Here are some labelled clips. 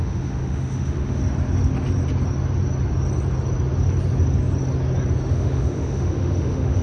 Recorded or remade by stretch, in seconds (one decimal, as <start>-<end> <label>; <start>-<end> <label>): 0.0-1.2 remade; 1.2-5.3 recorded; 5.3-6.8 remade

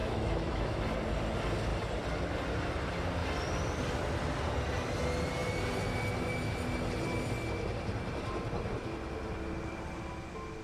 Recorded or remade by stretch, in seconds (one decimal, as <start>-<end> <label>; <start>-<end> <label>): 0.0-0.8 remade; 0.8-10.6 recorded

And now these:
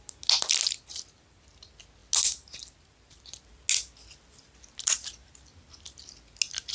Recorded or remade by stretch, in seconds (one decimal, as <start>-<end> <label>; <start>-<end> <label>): 0.0-6.7 recorded